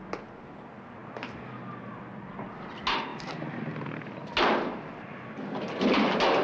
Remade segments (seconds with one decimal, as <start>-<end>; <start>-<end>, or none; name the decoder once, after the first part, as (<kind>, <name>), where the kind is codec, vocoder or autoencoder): none